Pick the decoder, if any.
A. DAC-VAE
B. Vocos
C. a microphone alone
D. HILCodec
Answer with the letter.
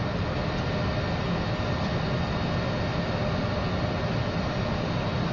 C